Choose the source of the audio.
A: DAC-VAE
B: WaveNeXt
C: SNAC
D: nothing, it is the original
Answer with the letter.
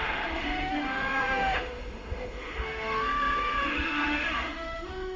A